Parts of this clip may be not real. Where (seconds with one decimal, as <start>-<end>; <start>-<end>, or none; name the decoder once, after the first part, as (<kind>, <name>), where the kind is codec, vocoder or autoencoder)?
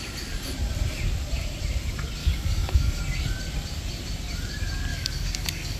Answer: 2.2-3.0 (codec, DAC); 4.9-5.8